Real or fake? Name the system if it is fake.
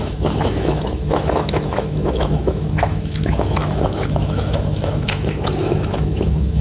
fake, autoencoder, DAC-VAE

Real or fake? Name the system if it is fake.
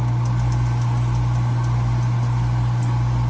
real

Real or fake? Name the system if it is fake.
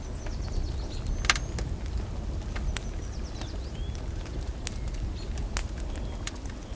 real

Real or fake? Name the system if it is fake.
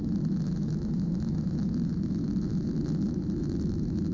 fake, autoencoder, DAC-VAE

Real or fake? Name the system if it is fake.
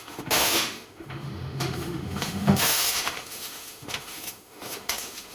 fake, autoencoder, DAC-VAE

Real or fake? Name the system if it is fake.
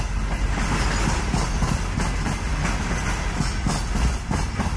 real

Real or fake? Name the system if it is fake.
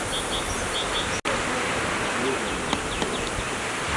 real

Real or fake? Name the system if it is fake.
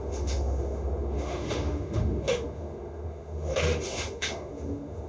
fake, autoencoder, DAC-VAE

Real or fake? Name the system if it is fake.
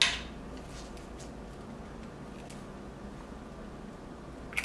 real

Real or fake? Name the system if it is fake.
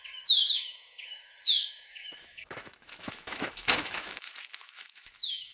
fake, autoencoder, DAC-VAE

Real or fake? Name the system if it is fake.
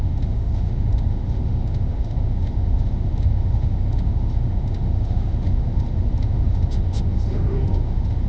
fake, autoencoder, DAC-VAE